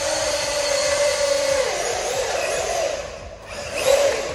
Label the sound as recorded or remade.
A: remade